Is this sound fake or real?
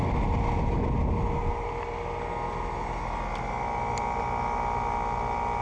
real